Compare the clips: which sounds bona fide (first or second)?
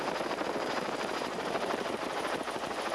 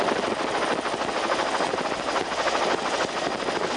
second